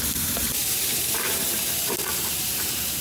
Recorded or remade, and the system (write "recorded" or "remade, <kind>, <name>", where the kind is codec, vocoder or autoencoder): remade, vocoder, BigVGAN v2